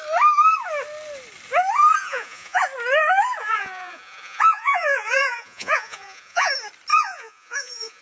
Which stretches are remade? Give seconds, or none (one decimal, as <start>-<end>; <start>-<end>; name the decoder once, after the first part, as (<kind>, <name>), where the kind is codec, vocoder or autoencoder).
2.0-2.6 (vocoder, Vocos); 3.4-6.5; 6.9-8.0